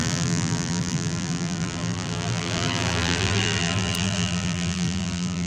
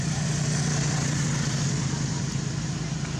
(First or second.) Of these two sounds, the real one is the second